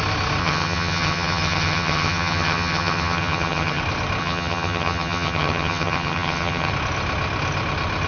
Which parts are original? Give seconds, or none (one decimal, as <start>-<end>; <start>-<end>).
0.0-0.4; 3.8-4.2; 6.7-8.1